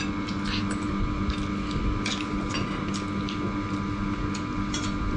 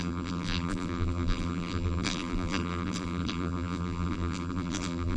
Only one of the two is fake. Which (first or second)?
second